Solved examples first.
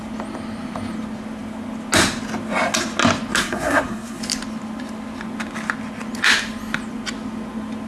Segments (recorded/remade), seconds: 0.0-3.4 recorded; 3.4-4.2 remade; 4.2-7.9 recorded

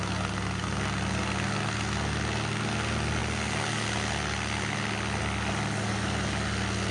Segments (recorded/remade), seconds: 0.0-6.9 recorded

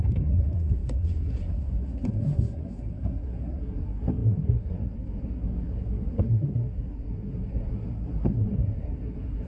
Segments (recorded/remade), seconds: 0.0-9.5 remade